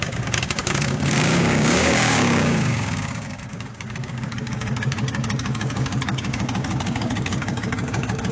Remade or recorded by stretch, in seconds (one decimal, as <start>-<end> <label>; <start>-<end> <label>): 0.0-8.3 remade

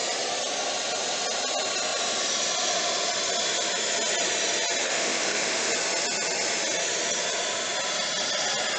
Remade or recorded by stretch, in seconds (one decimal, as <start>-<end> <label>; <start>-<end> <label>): 0.0-4.8 recorded; 4.8-5.7 remade; 5.7-8.8 recorded